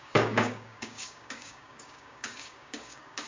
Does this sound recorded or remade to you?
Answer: remade